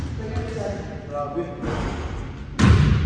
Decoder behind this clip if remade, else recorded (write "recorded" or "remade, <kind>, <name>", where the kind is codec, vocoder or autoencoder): recorded